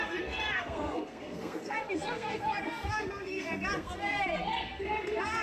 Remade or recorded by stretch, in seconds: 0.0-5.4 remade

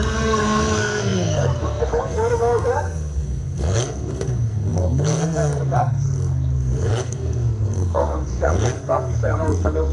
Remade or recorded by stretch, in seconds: 0.0-9.9 remade

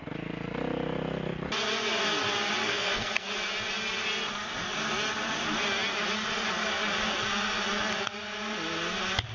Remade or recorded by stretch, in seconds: 0.0-2.6 recorded; 2.6-3.3 remade; 3.3-9.3 recorded